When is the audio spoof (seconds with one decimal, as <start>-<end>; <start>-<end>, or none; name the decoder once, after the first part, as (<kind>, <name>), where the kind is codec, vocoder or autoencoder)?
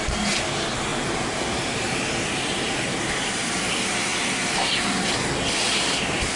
0.9-3.6 (vocoder, BigVGAN v2)